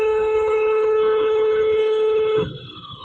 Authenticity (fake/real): fake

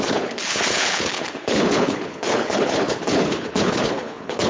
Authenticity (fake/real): fake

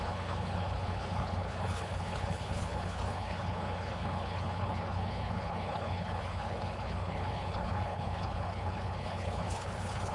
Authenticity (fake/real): fake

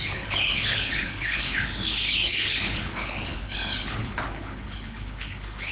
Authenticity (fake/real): fake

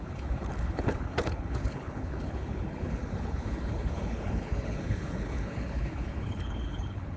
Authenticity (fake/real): fake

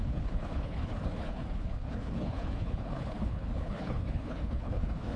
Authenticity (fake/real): fake